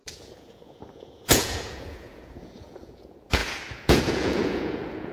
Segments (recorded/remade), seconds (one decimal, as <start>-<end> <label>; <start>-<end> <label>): 0.0-5.1 remade